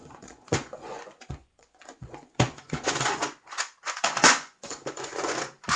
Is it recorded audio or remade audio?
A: remade